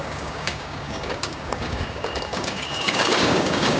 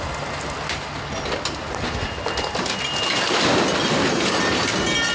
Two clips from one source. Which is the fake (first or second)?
first